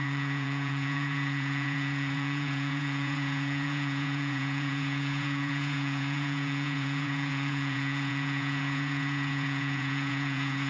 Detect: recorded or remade remade